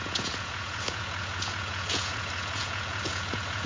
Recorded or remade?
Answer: remade